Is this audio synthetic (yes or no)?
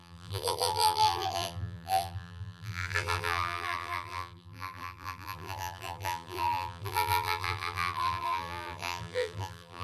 yes